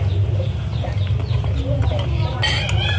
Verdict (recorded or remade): recorded